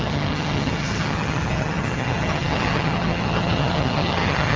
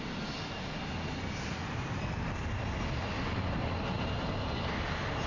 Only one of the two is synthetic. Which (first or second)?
first